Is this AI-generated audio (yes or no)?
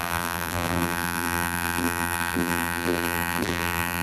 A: yes